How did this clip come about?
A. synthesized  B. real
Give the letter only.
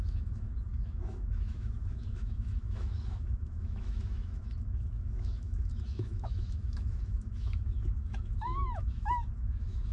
A